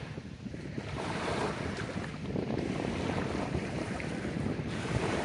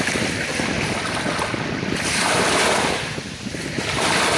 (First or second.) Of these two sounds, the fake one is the first